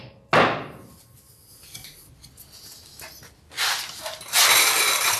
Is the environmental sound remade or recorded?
recorded